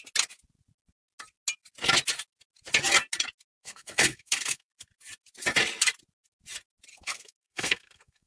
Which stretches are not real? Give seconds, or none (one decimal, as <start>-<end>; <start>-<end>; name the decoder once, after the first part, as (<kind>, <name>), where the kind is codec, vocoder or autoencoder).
3.6-4.7 (codec, SNAC); 6.9-8.3